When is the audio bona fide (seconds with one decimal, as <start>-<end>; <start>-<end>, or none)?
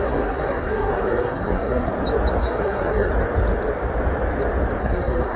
1.9-2.4; 3.1-4.8